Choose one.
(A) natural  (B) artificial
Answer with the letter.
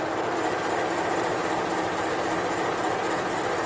A